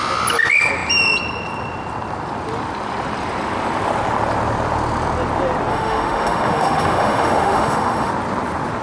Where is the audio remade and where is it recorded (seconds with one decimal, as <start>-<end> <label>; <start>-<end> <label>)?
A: 0.0-5.7 recorded; 5.7-8.1 remade; 8.1-8.8 recorded